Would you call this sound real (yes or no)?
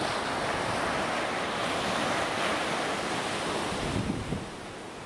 yes